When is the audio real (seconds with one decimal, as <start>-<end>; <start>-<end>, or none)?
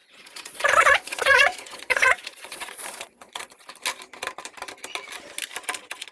3.7-6.1